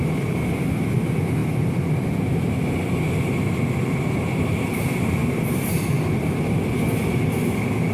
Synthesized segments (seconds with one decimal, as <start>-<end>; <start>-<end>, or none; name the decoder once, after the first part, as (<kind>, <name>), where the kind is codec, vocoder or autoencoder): none